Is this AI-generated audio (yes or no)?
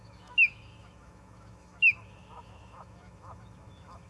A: yes